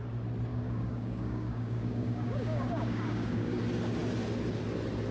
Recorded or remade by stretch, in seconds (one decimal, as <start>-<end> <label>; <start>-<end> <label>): 0.0-0.5 recorded; 0.5-3.6 remade; 3.6-5.1 recorded